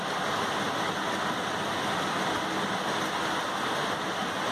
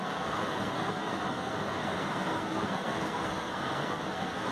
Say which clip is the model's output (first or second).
second